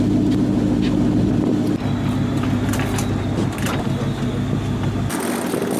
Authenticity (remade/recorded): recorded